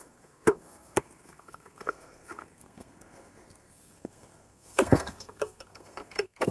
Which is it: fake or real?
fake